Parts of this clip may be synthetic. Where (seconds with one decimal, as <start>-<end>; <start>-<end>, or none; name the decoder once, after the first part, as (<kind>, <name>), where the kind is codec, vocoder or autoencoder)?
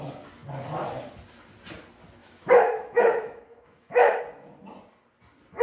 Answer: 2.2-4.2 (autoencoder, DAC-VAE)